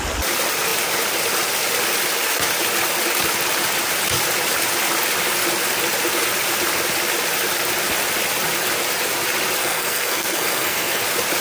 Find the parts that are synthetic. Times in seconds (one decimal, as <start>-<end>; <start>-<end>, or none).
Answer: 9.6-11.0